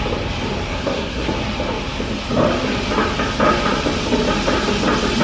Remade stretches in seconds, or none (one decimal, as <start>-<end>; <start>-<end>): 0.7-1.3